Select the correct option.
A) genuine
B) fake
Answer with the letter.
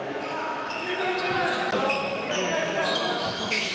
B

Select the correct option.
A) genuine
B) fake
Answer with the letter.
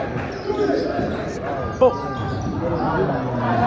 A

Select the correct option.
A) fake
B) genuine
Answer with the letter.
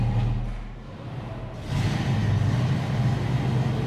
B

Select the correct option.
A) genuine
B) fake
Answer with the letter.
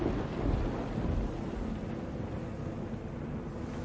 A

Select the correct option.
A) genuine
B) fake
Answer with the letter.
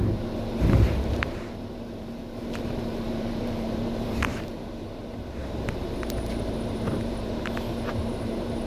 B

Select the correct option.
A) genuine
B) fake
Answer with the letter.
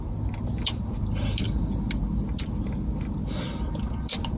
A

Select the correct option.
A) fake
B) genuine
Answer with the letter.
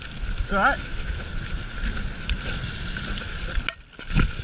B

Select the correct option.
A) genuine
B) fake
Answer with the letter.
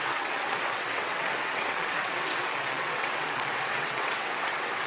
B